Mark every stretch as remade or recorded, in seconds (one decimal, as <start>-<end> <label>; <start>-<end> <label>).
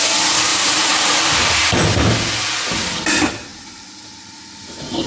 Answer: 0.0-0.5 recorded; 0.5-1.1 remade; 1.1-3.5 recorded; 3.5-5.1 remade